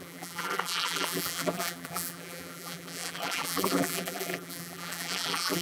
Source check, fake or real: fake